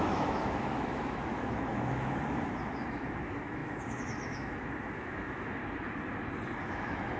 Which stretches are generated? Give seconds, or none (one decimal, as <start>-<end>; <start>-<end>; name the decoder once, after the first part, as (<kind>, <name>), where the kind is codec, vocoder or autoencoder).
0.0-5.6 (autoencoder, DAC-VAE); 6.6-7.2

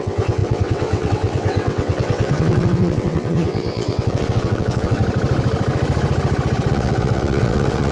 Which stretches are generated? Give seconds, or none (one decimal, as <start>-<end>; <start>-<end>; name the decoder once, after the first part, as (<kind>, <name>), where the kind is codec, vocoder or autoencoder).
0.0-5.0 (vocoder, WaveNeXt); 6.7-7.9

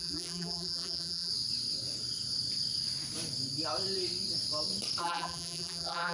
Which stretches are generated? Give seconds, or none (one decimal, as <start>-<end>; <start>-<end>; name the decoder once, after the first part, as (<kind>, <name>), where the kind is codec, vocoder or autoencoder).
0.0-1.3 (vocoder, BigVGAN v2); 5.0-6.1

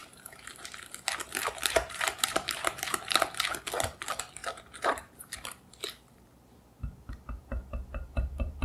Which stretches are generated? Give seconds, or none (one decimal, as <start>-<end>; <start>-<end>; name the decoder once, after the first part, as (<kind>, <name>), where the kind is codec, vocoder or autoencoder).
0.0-0.9 (vocoder, BigVGAN v2); 1.4-3.0; 4.4-6.6